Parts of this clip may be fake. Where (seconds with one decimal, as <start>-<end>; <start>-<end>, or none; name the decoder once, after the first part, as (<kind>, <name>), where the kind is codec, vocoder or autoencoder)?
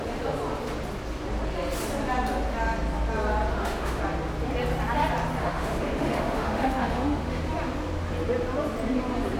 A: 3.5-4.0 (autoencoder, DAC-VAE); 5.4-7.4